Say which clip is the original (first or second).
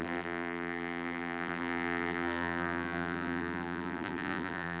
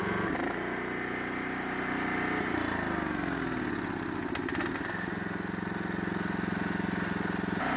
second